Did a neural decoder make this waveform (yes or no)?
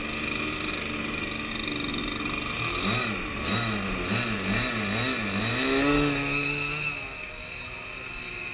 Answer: no